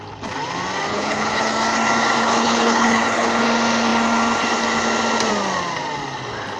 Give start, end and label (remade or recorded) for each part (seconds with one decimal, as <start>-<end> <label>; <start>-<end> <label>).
0.0-0.9 recorded; 0.9-1.4 remade; 1.4-2.2 recorded; 2.2-3.4 remade; 3.4-6.6 recorded